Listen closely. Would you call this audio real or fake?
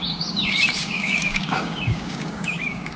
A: fake